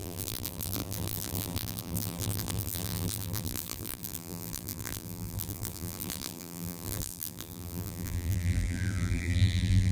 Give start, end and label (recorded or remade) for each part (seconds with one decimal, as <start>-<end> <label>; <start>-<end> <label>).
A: 0.0-9.9 remade